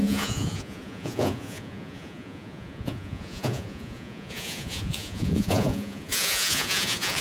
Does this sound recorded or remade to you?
remade